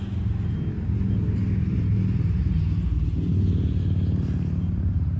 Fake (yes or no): no